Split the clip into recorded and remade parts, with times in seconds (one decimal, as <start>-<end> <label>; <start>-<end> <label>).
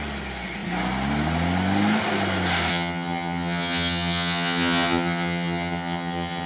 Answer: 0.0-2.7 recorded; 2.7-6.5 remade